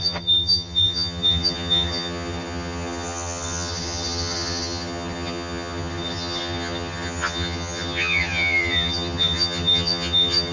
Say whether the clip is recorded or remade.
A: remade